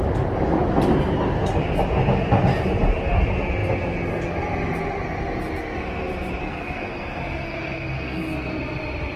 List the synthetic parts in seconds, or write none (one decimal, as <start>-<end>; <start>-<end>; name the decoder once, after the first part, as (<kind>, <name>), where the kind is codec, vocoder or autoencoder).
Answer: 6.4-8.5 (codec, SNAC)